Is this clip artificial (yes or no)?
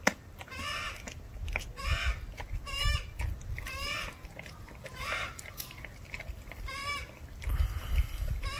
yes